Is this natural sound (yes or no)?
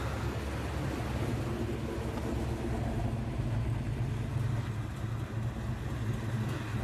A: yes